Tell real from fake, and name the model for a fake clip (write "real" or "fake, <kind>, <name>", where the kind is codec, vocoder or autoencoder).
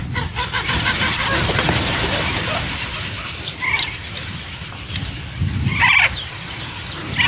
fake, vocoder, BigVGAN v2